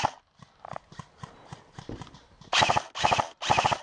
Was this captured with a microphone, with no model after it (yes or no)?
yes